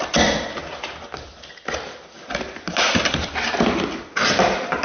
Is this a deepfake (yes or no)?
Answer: no